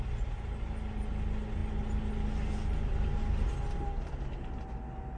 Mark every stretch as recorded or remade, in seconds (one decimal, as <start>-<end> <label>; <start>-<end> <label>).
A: 0.0-5.2 recorded